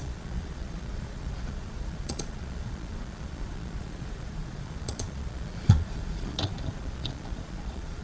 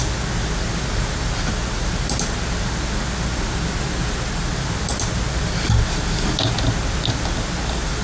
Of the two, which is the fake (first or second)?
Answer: first